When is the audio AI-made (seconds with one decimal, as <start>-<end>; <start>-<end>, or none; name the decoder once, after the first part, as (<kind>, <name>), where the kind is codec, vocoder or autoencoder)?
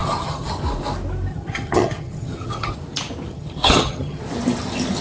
0.0-0.6 (vocoder, HiFi-GAN); 1.3-2.7; 3.3-4.2